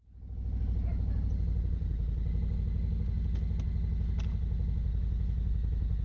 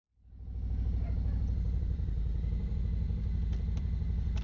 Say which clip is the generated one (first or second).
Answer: second